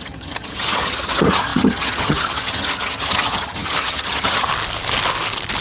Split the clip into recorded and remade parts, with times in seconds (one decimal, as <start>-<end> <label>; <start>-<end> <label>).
0.0-4.5 remade; 4.5-5.6 recorded